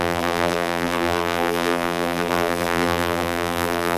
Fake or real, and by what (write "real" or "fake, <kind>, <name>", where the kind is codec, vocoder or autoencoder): fake, vocoder, BigVGAN v2